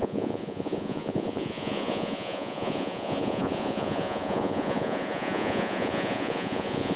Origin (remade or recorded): remade